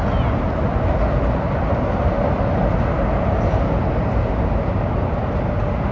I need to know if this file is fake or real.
real